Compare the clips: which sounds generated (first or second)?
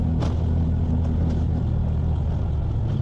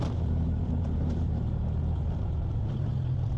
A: second